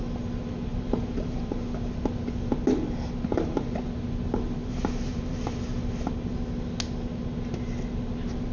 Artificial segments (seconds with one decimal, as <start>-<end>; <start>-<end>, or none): 0.7-1.5; 4.6-5.4